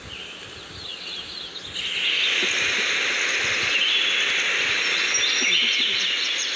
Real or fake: real